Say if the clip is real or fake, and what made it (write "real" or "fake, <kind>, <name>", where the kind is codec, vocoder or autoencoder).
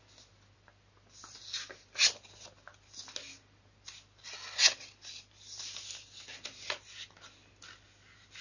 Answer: real